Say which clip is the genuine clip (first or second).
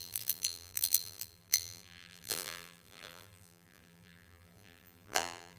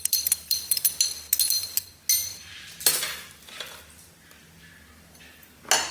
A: second